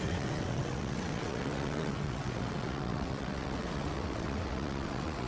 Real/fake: fake